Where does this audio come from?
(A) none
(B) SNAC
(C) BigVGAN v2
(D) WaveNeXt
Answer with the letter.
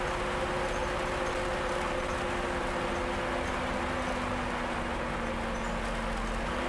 A